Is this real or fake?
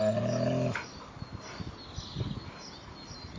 real